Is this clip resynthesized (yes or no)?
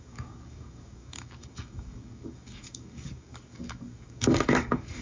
yes